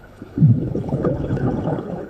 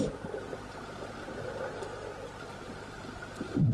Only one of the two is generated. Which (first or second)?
first